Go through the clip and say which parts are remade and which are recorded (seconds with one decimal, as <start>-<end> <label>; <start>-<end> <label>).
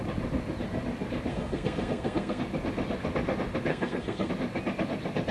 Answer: 0.0-1.3 recorded; 1.3-2.4 remade; 2.4-3.7 recorded; 3.7-4.3 remade; 4.3-5.3 recorded